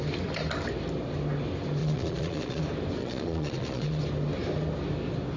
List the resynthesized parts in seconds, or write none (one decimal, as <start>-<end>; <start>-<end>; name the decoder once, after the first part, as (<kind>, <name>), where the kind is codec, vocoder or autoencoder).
1.8-2.6 (vocoder, Vocos); 3.0-4.0